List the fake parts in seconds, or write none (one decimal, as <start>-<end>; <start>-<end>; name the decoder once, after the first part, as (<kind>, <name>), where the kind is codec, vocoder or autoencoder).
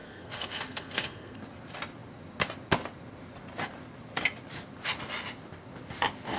0.0-1.4 (codec, SNAC)